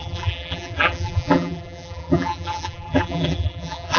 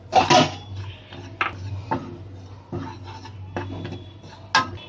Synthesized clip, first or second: first